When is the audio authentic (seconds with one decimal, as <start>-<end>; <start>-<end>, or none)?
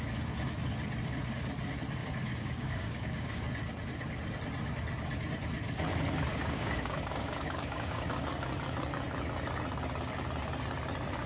0.0-2.0; 3.4-6.3; 8.3-11.3